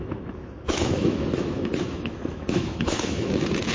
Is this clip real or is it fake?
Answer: fake